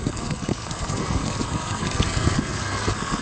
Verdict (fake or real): fake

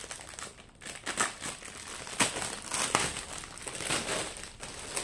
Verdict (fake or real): real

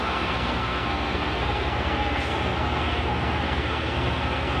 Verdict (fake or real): fake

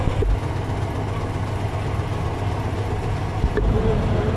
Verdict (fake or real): real